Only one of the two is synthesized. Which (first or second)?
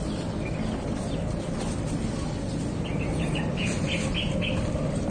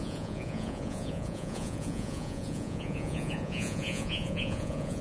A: second